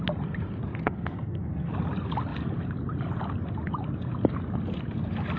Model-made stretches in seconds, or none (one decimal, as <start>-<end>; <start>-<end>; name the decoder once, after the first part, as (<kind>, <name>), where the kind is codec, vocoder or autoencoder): 0.7-1.7 (codec, SNAC)